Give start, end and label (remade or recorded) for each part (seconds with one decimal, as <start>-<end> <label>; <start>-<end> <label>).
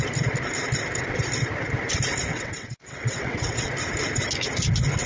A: 0.0-2.3 recorded; 2.3-3.7 remade; 3.7-5.1 recorded